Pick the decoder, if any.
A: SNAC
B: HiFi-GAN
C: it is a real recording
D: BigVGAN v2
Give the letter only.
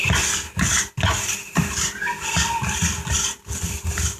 C